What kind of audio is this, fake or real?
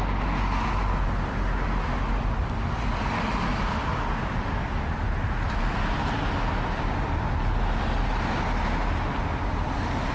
real